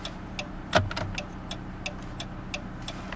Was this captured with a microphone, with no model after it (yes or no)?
yes